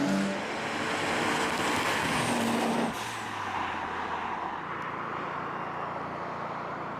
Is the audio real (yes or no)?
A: yes